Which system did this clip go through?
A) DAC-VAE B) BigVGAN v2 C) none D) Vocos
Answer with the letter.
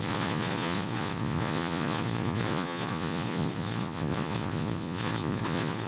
D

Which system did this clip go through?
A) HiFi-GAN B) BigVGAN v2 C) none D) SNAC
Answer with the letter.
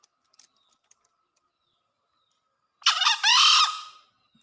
C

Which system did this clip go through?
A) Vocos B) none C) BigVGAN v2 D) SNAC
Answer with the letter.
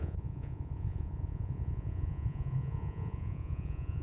A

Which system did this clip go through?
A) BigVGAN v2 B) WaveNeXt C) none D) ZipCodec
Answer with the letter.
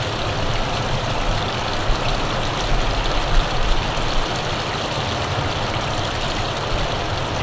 C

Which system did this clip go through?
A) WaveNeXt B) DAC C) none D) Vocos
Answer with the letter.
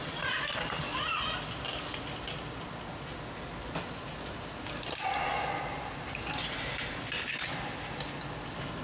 C